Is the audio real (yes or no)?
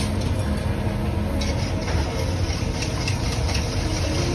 yes